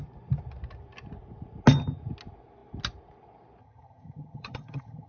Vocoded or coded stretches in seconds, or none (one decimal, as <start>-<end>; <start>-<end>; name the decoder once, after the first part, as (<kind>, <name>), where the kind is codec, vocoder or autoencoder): 3.6-5.1 (vocoder, HiFi-GAN)